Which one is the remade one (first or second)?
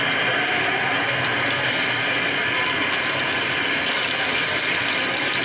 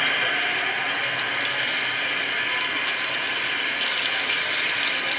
first